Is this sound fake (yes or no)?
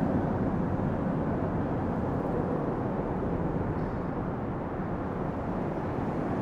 no